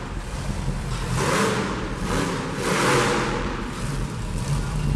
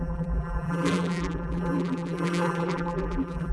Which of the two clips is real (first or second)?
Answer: first